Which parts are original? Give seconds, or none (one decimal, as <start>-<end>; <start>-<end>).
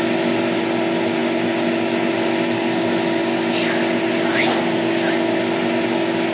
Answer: 0.0-6.3